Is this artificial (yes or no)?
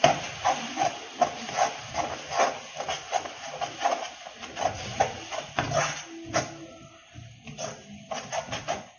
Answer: no